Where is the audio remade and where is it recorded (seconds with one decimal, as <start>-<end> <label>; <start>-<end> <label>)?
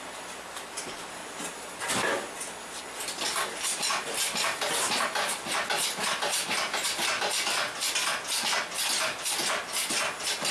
0.0-10.5 recorded